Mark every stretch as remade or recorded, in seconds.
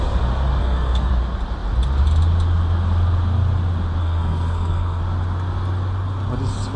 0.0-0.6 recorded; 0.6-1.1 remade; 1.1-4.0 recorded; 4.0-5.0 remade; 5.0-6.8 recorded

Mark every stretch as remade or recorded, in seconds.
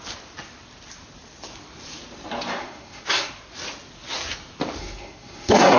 0.0-2.6 recorded; 2.6-3.3 remade; 3.3-4.8 recorded; 4.8-5.8 remade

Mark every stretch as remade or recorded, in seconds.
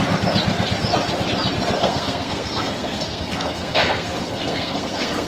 0.0-1.8 recorded; 1.8-5.3 remade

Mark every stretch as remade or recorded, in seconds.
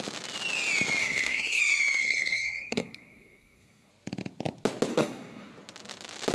0.0-1.0 recorded; 1.0-1.6 remade; 1.6-2.0 recorded; 2.0-3.9 remade; 3.9-4.9 recorded; 4.9-5.5 remade; 5.5-6.3 recorded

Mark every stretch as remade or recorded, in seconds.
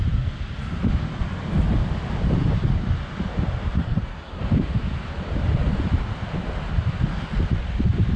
0.0-3.8 recorded; 3.8-4.4 remade; 4.4-8.2 recorded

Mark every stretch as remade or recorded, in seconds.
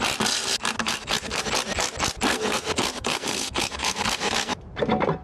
0.0-0.8 recorded; 0.8-1.4 remade; 1.4-2.3 recorded; 2.3-4.5 remade; 4.5-5.2 recorded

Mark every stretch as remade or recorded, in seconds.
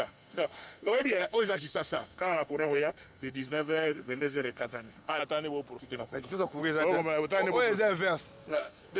0.0-5.2 remade; 5.2-5.8 recorded; 5.8-6.6 remade; 6.6-8.5 recorded; 8.5-9.0 remade